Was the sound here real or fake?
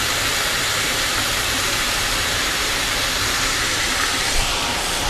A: fake